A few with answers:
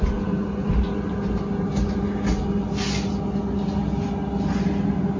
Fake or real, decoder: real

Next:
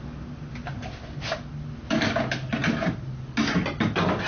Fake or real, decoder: real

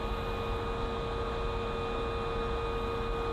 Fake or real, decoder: real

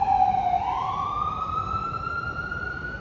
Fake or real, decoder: real